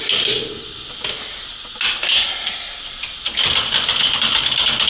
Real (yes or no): yes